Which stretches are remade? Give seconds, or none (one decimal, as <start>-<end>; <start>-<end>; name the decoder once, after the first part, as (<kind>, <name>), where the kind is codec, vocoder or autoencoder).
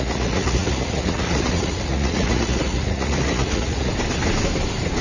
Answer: 0.0-3.9 (vocoder, Vocos)